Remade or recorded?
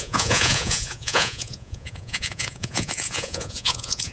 remade